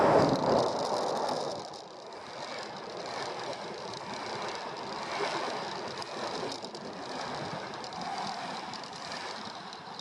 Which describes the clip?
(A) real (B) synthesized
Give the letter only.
A